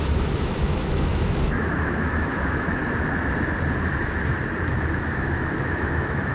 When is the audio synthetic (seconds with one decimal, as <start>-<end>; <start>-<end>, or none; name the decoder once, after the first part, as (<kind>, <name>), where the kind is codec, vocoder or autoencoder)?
0.0-2.8 (autoencoder, DAC-VAE); 4.7-6.3

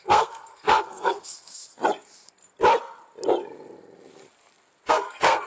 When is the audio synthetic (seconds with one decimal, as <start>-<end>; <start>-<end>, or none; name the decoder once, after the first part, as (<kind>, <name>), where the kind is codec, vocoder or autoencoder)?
0.0-1.6 (codec, SNAC); 4.9-5.5